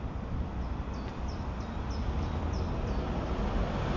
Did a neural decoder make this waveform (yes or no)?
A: no